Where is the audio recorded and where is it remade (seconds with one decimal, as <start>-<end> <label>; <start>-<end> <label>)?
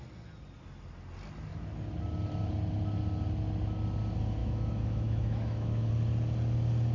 0.0-4.4 recorded; 4.4-5.9 remade; 5.9-6.9 recorded